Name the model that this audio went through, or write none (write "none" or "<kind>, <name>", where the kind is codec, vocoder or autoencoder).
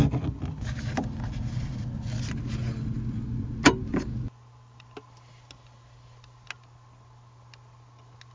none